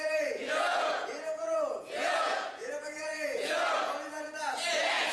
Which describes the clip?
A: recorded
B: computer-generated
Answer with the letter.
B